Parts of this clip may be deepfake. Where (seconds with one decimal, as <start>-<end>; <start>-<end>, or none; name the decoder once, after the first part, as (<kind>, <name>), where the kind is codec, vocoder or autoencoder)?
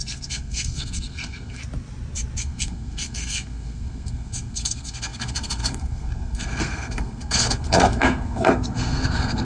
0.0-1.6 (codec, SNAC); 2.4-9.4